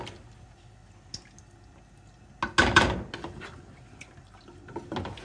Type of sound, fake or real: real